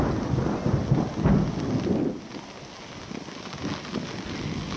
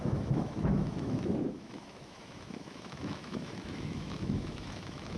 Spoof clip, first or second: second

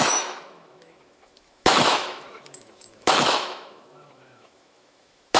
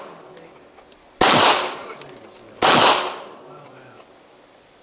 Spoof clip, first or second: first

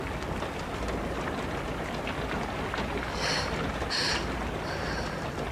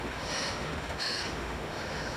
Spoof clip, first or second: second